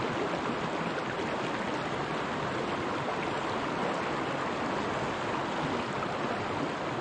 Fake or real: real